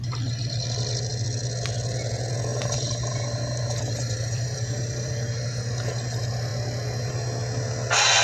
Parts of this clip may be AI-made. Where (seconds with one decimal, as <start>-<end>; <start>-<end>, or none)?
2.5-5.1